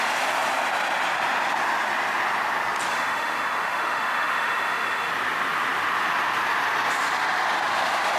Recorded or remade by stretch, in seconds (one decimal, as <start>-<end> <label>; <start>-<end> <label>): 0.0-2.9 recorded; 2.9-5.1 remade; 5.1-8.2 recorded